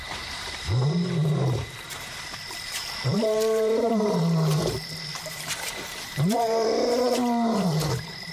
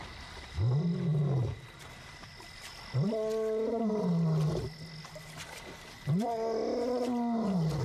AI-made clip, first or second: first